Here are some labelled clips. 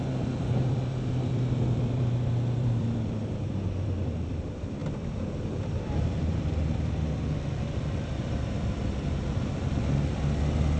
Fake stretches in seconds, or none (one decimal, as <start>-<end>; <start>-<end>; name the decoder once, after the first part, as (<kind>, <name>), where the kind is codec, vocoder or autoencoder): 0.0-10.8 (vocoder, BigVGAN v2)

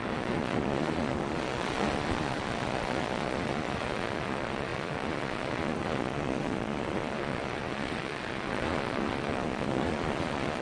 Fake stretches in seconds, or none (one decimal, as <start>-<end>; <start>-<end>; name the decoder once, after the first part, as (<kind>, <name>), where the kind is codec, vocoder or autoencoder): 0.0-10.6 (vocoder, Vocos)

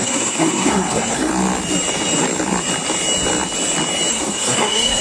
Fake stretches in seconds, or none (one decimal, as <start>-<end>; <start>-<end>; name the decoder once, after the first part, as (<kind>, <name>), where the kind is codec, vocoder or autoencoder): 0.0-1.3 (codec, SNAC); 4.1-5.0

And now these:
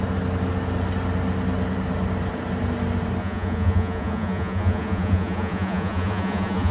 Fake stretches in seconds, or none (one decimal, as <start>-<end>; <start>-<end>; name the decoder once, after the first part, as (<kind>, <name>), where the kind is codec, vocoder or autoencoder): 3.2-6.7 (vocoder, Vocos)